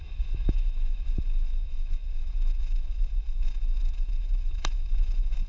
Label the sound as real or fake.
fake